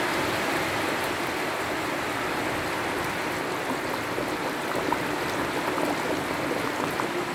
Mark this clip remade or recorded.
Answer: recorded